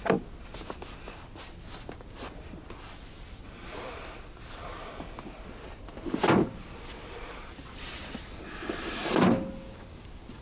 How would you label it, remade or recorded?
recorded